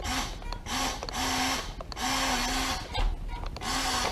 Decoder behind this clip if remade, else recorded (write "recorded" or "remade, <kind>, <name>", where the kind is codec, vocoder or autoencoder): recorded